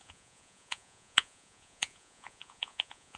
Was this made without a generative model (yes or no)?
no